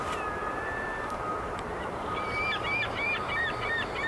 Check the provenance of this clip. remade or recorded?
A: remade